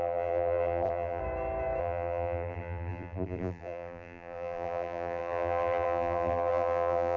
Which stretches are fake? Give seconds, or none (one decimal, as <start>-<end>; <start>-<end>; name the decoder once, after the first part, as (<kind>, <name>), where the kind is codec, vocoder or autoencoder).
0.0-1.2 (vocoder, BigVGAN v2); 1.8-7.2